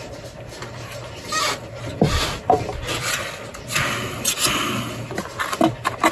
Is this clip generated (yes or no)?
no